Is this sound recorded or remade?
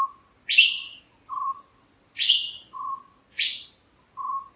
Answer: recorded